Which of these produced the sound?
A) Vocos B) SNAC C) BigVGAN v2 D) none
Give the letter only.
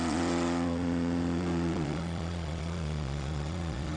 A